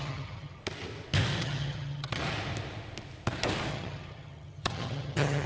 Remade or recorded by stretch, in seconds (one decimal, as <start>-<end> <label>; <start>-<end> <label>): 0.0-0.6 remade; 0.6-1.4 recorded; 1.4-2.2 remade; 2.2-3.7 recorded; 3.7-5.5 remade